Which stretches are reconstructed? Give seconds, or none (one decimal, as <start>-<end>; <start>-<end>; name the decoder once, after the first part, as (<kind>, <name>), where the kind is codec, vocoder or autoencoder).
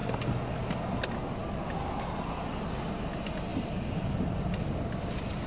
none